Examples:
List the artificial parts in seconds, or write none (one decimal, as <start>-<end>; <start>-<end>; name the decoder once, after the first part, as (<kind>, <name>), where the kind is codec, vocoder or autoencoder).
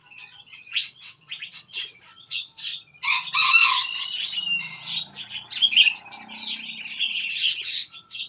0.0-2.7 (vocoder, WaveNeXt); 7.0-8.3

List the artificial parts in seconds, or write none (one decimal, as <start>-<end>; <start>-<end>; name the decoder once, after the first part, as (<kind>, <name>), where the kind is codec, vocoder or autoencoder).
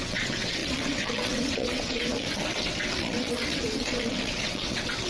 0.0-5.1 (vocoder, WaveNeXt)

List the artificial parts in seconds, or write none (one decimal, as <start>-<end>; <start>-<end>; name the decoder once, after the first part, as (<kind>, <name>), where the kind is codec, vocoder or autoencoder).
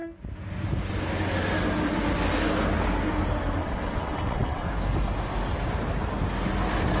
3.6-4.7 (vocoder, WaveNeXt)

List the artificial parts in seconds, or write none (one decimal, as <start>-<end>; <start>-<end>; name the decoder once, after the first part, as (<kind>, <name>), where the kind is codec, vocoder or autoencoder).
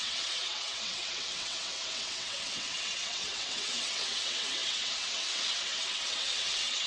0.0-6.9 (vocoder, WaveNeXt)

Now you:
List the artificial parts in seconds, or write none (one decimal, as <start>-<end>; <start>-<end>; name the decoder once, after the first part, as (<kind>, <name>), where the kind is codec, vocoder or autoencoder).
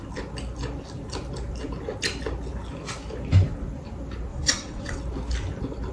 4.3-5.0 (vocoder, WaveNeXt)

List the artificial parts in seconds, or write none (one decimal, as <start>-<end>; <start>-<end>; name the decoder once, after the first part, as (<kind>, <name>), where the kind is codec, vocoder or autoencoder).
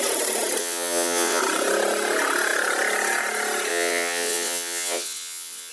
0.6-1.4 (vocoder, WaveNeXt); 3.7-5.7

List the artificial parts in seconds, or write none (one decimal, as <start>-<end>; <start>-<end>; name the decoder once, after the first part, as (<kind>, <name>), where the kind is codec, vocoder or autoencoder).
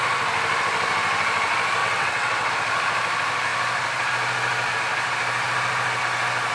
1.8-2.5 (vocoder, WaveNeXt)